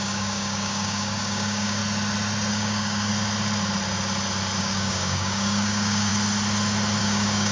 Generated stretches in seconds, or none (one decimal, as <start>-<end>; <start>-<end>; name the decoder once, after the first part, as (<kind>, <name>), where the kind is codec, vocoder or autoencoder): 0.0-1.8 (codec, DAC); 2.5-3.1; 4.6-6.1; 7.0-7.5